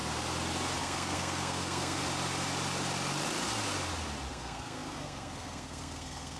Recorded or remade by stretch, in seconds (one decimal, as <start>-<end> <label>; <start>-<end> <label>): 0.0-0.8 recorded; 0.8-2.0 remade; 2.0-4.3 recorded; 4.3-6.4 remade